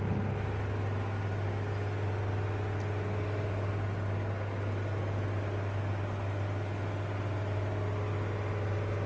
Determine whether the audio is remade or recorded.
recorded